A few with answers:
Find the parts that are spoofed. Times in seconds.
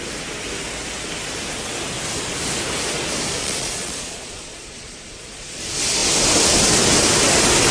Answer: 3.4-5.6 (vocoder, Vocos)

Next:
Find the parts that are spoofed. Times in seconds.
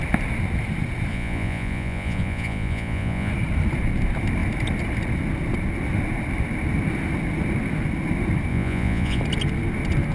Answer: 1.1-3.3 (vocoder, Vocos); 8.5-9.2